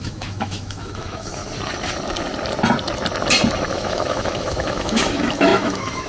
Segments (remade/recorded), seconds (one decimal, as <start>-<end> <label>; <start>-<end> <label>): 0.0-1.4 remade; 1.4-3.7 recorded; 3.7-6.1 remade

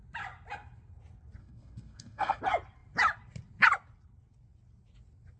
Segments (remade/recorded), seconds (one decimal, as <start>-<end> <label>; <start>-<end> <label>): 0.0-1.4 recorded; 1.4-2.4 remade; 2.4-5.4 recorded

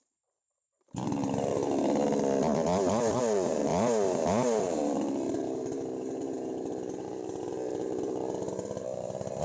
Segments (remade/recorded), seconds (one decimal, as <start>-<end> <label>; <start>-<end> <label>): 0.0-1.6 remade; 1.6-3.2 recorded; 3.2-3.7 remade; 3.7-4.6 recorded; 4.6-9.4 remade

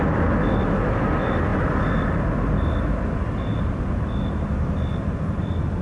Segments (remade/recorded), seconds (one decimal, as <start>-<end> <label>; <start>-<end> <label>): 0.0-5.8 recorded